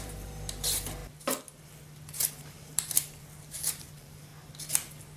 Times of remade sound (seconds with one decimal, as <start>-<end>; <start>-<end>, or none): 0.0-1.0; 2.3-4.3